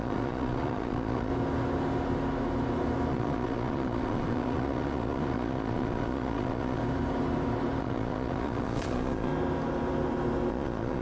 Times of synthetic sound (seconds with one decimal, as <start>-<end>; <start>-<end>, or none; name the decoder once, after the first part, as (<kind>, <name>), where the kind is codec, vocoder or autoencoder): 0.0-1.3 (vocoder, Vocos); 3.1-6.8; 7.8-9.3; 10.5-11.0